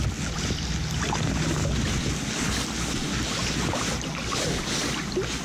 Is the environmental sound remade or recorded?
recorded